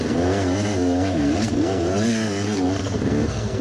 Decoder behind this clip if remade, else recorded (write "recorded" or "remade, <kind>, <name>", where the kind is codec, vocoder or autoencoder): remade, codec, SNAC